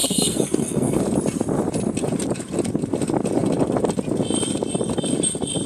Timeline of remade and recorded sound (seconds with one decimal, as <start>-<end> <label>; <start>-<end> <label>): 0.0-1.0 remade; 1.0-5.7 recorded